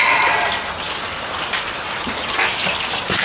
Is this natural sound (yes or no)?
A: yes